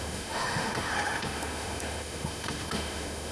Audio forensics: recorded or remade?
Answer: remade